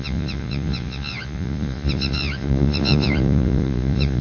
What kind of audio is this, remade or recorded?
remade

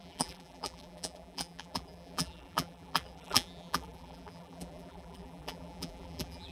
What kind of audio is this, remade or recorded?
remade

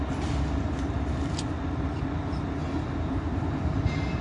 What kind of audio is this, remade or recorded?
recorded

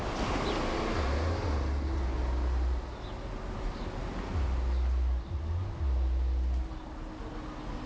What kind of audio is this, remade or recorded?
recorded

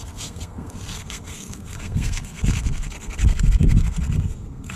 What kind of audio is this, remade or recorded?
remade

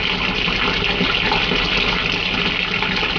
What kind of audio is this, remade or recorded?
recorded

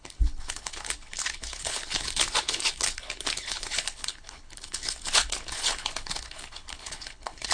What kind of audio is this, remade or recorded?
remade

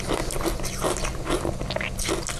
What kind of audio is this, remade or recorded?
recorded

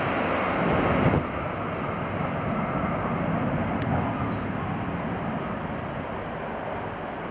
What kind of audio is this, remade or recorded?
recorded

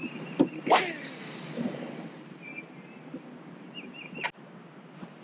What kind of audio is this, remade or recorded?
recorded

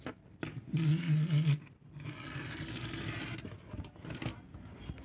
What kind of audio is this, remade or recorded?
recorded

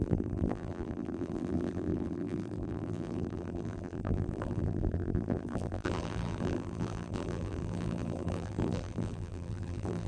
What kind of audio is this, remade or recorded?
remade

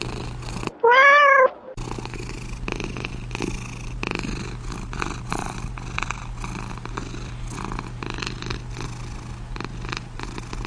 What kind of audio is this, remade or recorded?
recorded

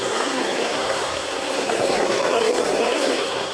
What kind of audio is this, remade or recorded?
remade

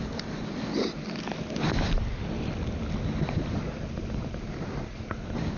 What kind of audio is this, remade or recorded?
recorded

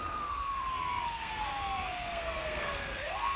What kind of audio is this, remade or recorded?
remade